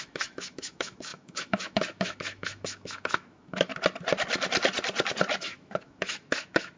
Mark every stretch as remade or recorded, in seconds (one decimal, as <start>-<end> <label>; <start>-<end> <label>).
0.0-3.7 remade; 3.7-5.4 recorded; 5.4-6.8 remade